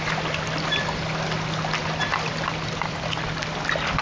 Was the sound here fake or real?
real